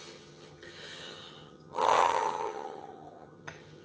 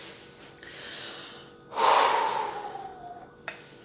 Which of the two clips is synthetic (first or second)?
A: first